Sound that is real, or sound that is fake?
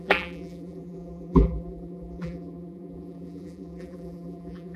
fake